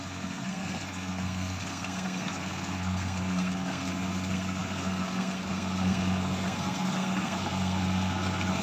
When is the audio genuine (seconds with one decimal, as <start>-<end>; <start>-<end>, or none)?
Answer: none